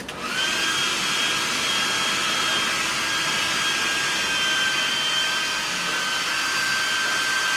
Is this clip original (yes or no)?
yes